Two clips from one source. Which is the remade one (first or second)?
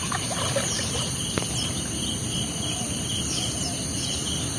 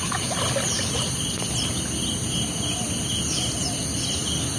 first